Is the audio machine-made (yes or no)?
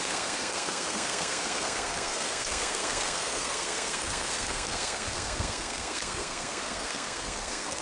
yes